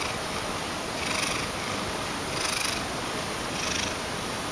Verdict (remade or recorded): recorded